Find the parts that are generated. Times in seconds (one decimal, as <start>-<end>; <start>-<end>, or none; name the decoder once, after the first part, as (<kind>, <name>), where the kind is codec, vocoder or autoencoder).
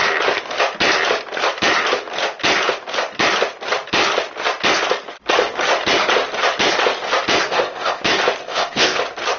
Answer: 7.5-8.0 (codec, ZipCodec); 8.4-9.0